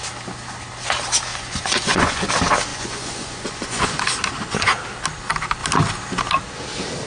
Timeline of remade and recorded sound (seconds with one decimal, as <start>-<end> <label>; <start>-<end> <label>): 0.0-1.3 recorded; 1.3-2.3 remade; 2.3-2.7 recorded; 2.7-4.0 remade; 4.0-7.1 recorded